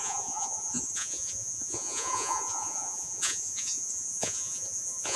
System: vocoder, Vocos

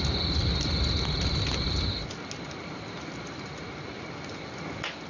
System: none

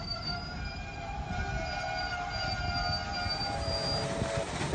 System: none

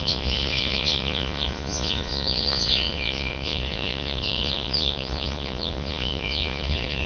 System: vocoder, Vocos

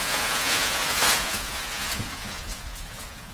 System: vocoder, Vocos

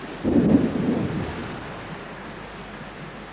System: none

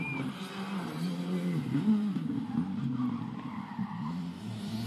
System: none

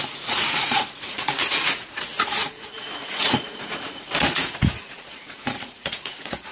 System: vocoder, Vocos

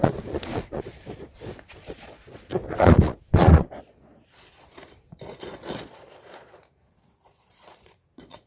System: vocoder, Vocos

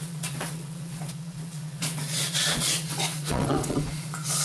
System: vocoder, Vocos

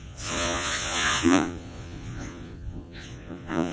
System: vocoder, Vocos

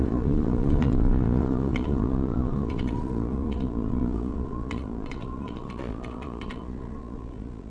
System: vocoder, Vocos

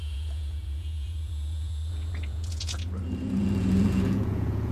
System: vocoder, Vocos